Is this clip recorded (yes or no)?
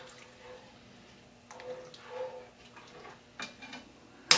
yes